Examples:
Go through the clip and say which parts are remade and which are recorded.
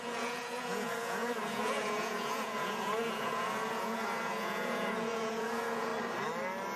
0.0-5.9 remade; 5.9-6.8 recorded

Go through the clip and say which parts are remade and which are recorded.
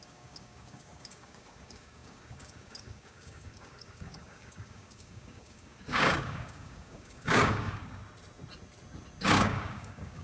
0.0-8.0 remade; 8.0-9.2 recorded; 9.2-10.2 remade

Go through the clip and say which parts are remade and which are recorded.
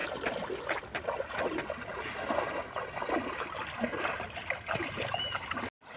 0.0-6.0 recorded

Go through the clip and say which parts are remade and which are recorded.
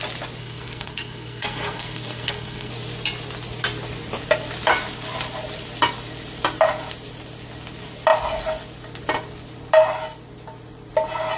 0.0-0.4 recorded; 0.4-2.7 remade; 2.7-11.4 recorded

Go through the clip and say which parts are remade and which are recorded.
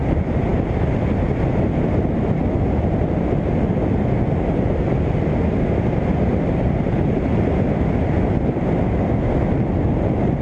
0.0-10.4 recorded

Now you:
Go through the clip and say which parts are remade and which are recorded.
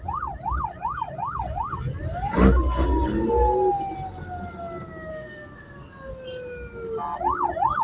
0.0-5.1 recorded; 5.1-6.1 remade; 6.1-7.8 recorded